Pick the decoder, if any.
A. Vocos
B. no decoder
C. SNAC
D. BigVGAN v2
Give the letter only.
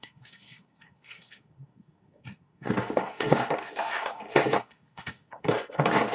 C